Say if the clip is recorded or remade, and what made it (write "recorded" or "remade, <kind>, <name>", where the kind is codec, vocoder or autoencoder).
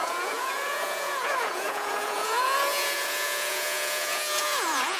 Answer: remade, vocoder, Vocos